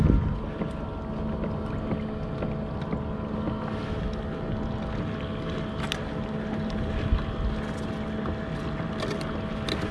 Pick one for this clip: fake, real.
real